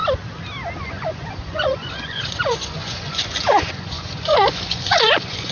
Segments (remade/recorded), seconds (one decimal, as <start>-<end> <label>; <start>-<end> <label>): 0.0-0.8 recorded; 0.8-5.5 remade